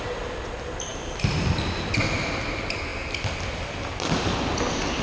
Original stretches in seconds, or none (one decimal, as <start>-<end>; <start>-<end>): 0.0-5.0